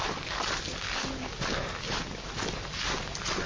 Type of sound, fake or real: real